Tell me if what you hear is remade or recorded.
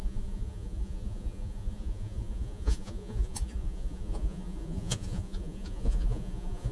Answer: remade